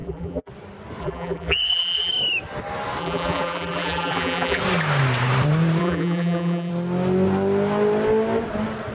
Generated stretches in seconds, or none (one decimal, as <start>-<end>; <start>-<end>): 0.0-0.5; 1.0-2.1; 3.0-4.6; 5.8-6.7